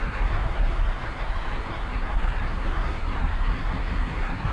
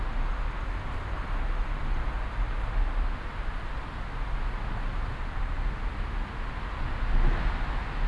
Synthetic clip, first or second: first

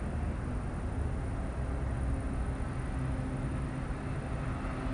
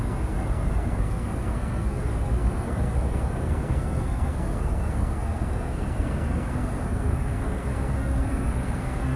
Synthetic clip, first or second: second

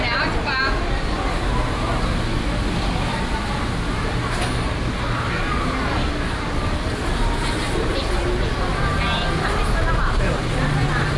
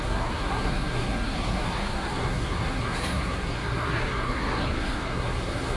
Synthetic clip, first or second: second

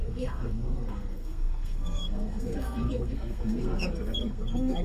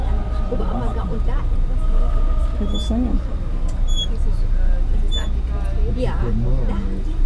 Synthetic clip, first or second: first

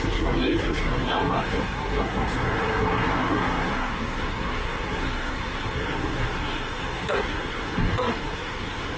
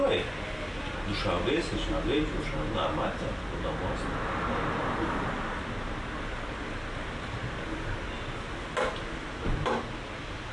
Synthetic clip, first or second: first